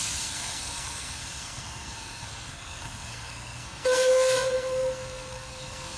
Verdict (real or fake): fake